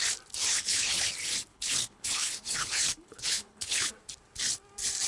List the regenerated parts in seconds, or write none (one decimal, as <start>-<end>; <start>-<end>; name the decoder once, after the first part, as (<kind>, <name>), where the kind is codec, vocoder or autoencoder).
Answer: 0.4-1.1 (codec, HILCodec); 1.5-3.9